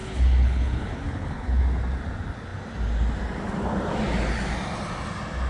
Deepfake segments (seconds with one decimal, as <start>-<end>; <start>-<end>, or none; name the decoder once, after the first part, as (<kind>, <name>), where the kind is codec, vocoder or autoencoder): 0.0-1.6 (codec, HILCodec)